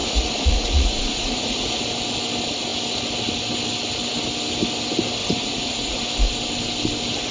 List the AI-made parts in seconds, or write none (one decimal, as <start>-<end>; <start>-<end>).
0.0-1.8; 5.2-6.0